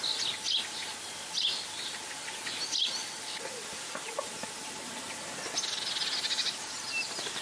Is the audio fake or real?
real